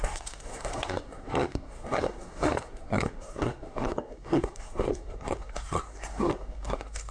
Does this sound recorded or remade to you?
remade